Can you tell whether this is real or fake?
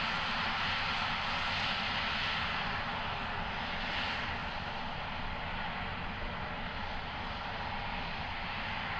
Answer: real